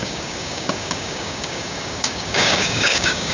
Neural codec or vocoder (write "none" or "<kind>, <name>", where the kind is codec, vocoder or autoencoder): codec, DAC